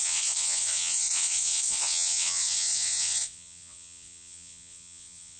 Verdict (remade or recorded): remade